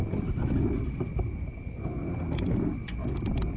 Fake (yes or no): no